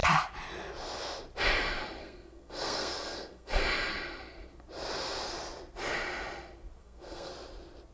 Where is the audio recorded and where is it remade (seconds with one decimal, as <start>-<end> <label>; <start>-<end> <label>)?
0.0-2.0 recorded; 2.0-3.6 remade; 3.6-6.8 recorded; 6.8-7.3 remade; 7.3-7.9 recorded